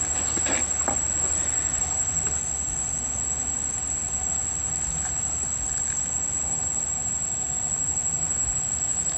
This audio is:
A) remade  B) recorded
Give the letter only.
B